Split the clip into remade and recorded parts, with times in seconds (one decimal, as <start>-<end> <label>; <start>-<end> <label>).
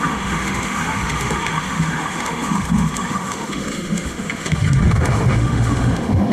0.0-6.3 remade